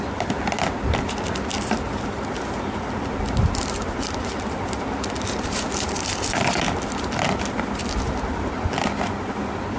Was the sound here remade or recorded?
recorded